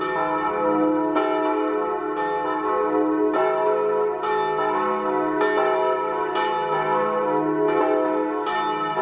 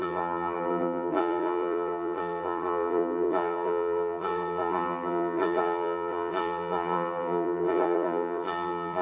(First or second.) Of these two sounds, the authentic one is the first